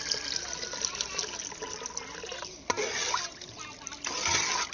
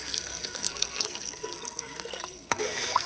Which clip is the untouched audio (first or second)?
first